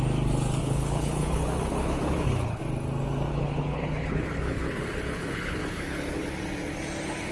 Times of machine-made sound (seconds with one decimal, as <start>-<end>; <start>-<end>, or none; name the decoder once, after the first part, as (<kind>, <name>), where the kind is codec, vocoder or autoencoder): 0.6-2.6 (codec, HILCodec); 3.3-6.3